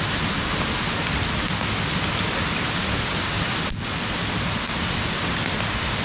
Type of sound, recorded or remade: recorded